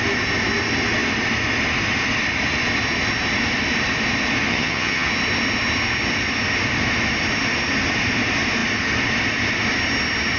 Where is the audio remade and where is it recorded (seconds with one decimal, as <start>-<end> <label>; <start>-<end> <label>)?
0.0-4.5 recorded; 4.5-5.1 remade; 5.1-10.4 recorded